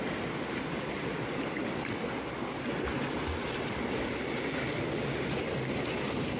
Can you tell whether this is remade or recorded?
recorded